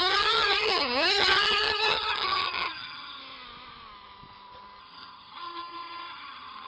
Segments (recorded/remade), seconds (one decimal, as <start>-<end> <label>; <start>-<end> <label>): 0.0-3.2 remade; 3.2-4.8 recorded; 4.8-6.7 remade